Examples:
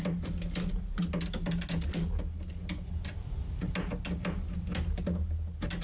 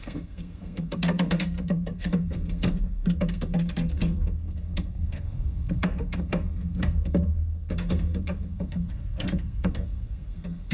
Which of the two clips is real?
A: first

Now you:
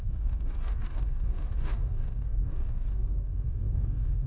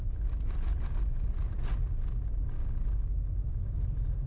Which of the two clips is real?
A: second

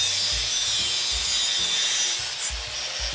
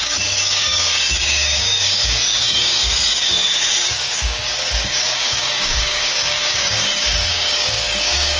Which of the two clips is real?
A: first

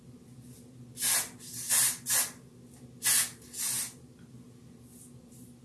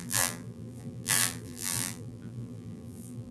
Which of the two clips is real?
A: first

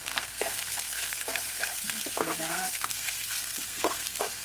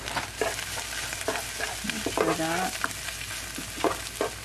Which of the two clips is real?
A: second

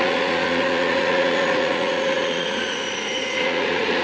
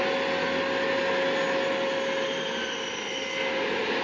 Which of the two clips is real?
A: second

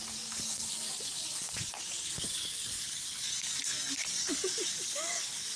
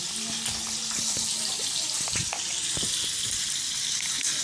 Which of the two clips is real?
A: second